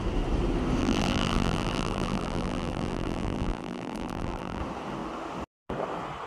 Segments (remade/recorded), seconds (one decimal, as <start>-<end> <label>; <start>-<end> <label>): 0.0-0.8 recorded; 0.8-4.6 remade; 4.6-6.3 recorded